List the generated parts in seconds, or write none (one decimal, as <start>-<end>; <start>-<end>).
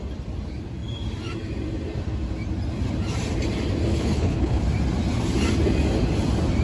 3.9-4.6